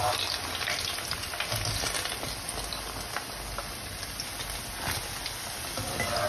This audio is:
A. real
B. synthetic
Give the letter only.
A